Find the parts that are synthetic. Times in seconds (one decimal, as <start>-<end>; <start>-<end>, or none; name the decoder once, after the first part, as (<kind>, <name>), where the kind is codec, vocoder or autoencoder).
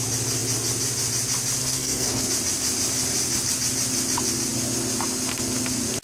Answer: 1.6-2.3 (codec, SNAC)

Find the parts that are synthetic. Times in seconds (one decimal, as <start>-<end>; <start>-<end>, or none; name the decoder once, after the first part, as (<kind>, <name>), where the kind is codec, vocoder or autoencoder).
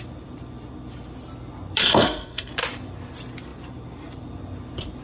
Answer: 1.8-2.5 (codec, SNAC)